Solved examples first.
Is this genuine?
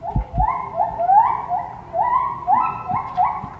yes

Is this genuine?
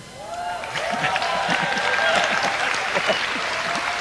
yes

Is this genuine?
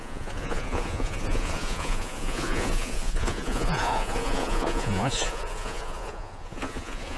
no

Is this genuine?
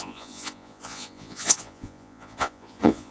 no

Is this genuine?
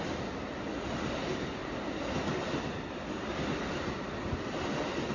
yes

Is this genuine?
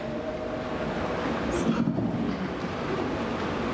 yes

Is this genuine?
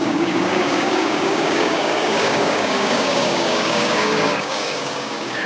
no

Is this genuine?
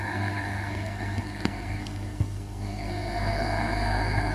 no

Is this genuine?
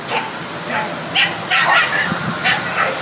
yes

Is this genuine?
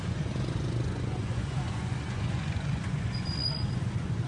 no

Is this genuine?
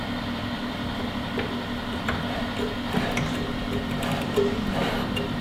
no